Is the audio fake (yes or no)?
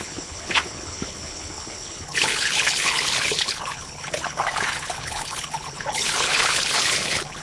yes